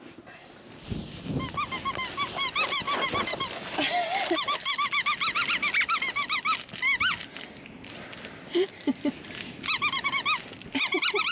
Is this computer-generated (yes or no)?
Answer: no